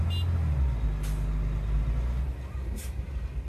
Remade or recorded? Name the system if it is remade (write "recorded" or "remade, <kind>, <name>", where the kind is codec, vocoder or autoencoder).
recorded